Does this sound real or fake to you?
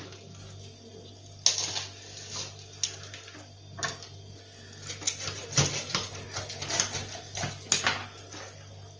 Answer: real